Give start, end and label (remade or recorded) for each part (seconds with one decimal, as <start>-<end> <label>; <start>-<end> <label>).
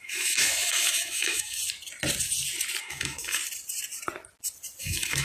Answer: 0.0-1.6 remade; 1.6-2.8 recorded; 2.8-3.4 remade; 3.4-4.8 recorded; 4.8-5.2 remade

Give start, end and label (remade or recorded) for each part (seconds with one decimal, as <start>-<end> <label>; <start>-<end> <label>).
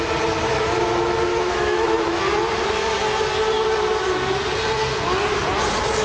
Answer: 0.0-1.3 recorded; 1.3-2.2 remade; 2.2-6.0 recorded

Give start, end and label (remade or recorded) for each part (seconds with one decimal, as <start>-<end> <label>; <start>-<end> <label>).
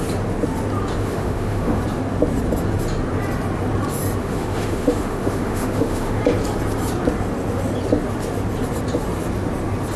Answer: 0.0-1.0 recorded; 1.0-1.8 remade; 1.8-4.2 recorded; 4.2-6.2 remade; 6.2-10.0 recorded